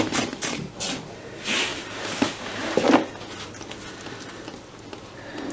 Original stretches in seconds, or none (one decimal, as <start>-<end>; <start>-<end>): 0.0-1.7; 2.4-5.5